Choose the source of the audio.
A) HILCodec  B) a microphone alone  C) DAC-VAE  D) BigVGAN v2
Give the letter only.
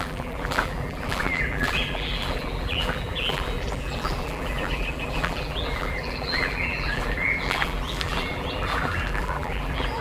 D